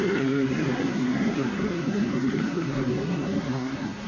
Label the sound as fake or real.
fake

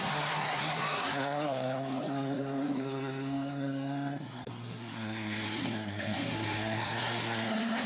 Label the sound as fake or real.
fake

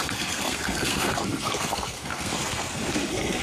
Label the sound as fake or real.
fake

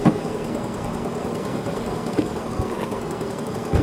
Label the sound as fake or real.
fake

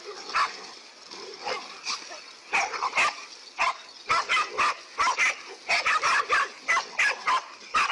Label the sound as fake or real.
real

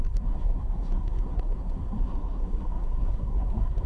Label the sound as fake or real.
fake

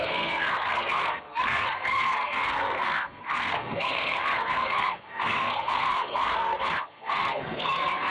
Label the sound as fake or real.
fake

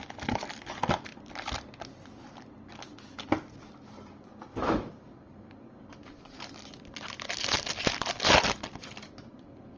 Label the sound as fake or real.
real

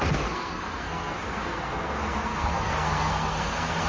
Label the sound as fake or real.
fake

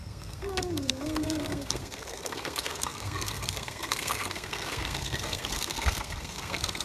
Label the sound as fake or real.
fake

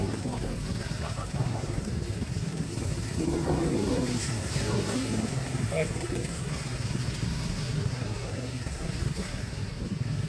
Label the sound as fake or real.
fake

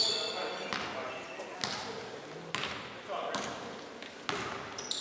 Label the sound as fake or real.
real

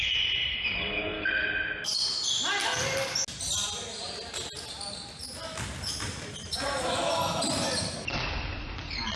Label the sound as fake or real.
real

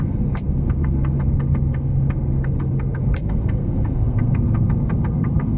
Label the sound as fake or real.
fake